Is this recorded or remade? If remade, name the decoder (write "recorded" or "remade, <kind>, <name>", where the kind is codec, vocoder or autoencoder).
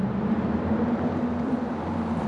remade, vocoder, BigVGAN v2